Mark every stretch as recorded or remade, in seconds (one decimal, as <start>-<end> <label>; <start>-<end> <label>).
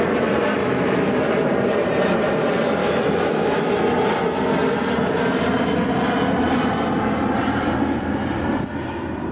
0.0-0.6 recorded; 0.6-1.2 remade; 1.2-2.8 recorded; 2.8-3.7 remade; 3.7-9.3 recorded